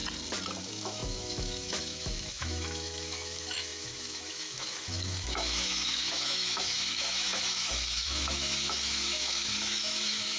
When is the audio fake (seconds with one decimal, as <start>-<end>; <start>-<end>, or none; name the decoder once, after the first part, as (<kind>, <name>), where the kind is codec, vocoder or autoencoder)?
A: 0.6-10.4 (autoencoder, DAC-VAE)